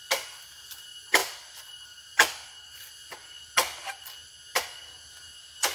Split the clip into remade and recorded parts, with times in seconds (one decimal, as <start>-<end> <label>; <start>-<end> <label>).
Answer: 0.0-5.7 recorded